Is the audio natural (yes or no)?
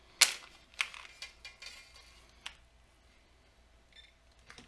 yes